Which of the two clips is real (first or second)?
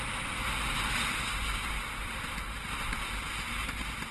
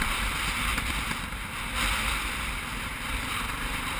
first